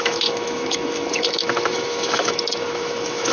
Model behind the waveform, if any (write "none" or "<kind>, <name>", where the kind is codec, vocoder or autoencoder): autoencoder, DAC-VAE